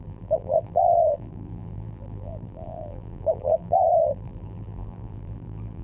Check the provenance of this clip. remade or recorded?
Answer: remade